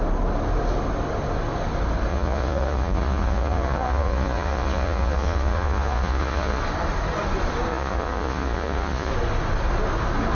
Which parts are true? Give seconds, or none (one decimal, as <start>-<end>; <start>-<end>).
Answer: 0.0-2.1; 6.6-7.7; 9.1-10.3